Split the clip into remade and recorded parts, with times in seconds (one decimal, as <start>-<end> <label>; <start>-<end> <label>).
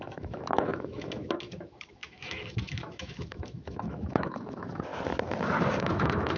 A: 0.0-4.9 remade; 4.9-5.8 recorded; 5.8-6.4 remade